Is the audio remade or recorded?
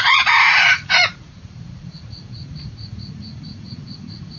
remade